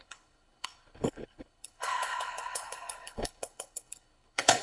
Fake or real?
fake